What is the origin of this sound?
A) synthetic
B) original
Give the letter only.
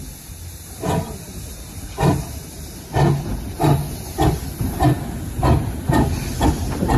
B